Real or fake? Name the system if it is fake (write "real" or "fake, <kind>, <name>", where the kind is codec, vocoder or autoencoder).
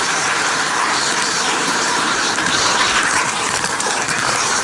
fake, vocoder, BigVGAN v2